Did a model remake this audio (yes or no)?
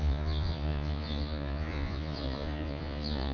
yes